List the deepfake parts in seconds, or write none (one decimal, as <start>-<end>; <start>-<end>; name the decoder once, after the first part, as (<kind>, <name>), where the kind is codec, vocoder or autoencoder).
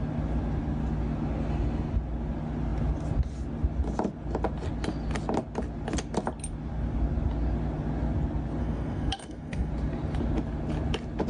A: 8.6-9.7 (codec, SNAC)